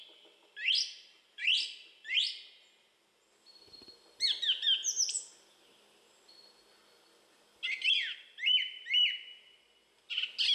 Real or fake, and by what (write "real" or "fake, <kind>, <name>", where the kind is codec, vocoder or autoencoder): real